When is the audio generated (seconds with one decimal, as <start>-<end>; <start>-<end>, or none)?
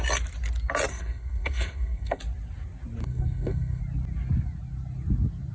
0.9-2.2; 3.0-3.8